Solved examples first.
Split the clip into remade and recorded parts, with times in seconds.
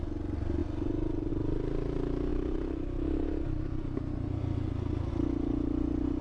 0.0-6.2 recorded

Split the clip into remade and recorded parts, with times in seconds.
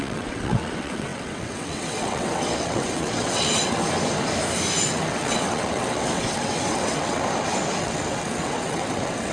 0.0-3.8 remade; 3.8-4.8 recorded; 4.8-7.2 remade; 7.2-7.8 recorded; 7.8-9.3 remade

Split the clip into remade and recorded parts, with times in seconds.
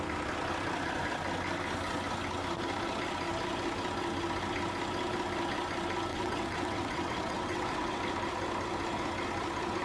0.0-6.1 recorded; 6.1-8.0 remade; 8.0-9.8 recorded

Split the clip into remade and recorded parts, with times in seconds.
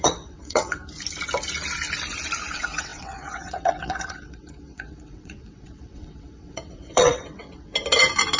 0.0-0.8 remade; 0.8-2.5 recorded; 2.5-7.7 remade; 7.7-8.4 recorded